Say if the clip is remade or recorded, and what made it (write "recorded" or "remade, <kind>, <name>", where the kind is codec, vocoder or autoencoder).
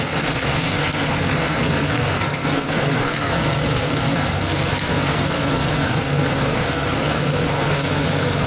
remade, codec, SNAC